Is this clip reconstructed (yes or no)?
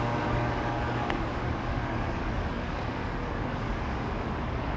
yes